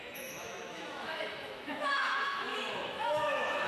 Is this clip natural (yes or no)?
no